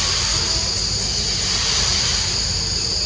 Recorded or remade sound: recorded